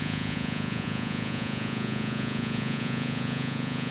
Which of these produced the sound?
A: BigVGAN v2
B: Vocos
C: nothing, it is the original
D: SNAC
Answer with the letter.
B